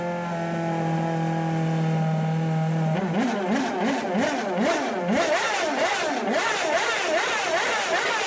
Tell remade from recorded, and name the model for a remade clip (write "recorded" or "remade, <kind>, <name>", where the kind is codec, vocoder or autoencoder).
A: recorded